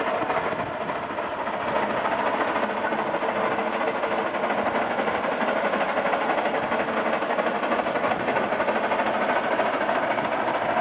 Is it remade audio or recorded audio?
recorded